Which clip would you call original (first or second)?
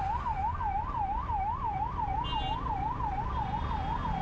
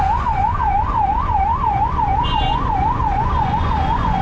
first